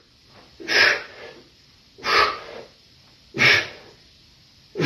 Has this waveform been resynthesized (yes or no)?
yes